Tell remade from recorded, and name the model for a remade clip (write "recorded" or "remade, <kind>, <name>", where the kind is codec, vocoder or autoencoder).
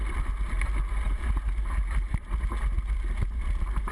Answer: recorded